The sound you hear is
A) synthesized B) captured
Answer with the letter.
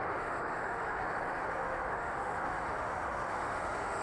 A